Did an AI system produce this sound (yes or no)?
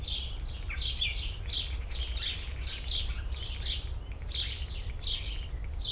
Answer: no